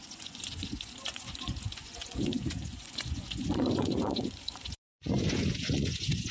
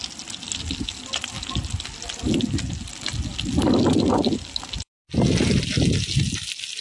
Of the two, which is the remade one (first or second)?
first